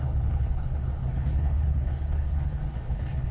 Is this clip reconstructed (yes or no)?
yes